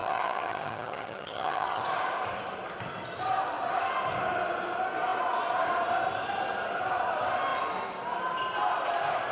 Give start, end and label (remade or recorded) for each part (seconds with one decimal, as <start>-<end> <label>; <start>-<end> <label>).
0.0-1.8 remade; 1.8-9.3 recorded

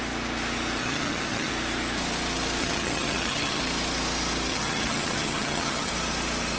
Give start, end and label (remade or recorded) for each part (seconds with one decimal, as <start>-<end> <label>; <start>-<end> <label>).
0.0-0.8 recorded; 0.8-1.5 remade; 1.5-2.6 recorded; 2.6-3.6 remade; 3.6-4.5 recorded; 4.5-5.9 remade; 5.9-6.6 recorded

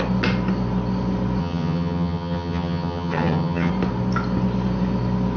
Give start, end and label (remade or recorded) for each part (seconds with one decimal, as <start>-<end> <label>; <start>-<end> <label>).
0.0-1.4 recorded; 1.4-3.7 remade; 3.7-5.4 recorded

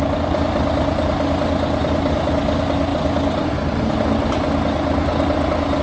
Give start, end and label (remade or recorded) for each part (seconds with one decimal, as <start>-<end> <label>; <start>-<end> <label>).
0.0-5.8 recorded